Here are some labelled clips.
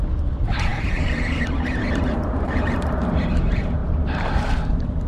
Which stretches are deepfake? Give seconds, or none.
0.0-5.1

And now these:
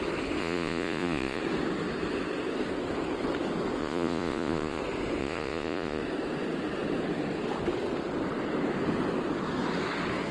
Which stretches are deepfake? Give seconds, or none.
0.4-1.4; 3.8-4.8; 5.2-6.0

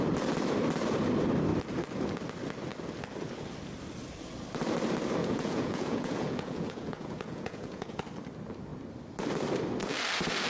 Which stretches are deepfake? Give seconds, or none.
5.2-8.0

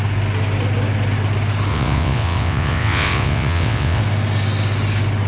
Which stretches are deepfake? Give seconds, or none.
1.7-4.0

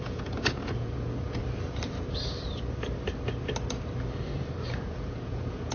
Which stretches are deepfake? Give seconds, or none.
0.0-1.4; 4.8-5.7

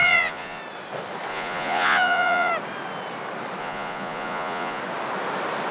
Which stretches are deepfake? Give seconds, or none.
0.0-0.6; 1.3-2.5; 3.6-4.8